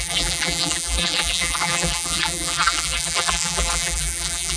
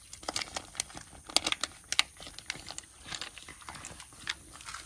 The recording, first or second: second